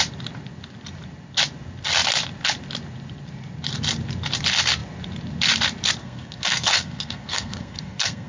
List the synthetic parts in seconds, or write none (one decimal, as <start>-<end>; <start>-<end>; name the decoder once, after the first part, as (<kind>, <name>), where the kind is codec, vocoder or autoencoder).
6.0-8.3 (codec, SNAC)